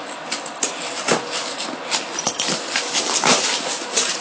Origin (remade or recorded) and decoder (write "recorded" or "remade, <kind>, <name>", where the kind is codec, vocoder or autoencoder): recorded